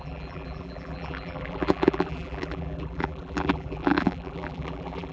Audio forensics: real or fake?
fake